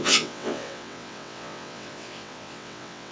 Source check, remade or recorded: remade